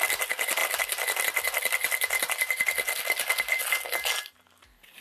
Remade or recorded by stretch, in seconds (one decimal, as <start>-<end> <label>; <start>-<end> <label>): 0.0-5.0 recorded